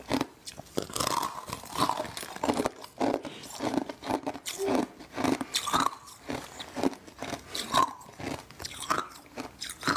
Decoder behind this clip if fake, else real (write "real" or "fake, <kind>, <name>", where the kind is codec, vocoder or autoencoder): real